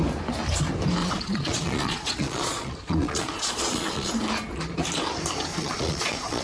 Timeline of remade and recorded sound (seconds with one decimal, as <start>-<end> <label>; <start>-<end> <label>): 0.0-1.0 recorded; 1.0-4.1 remade; 4.1-5.5 recorded; 5.5-6.4 remade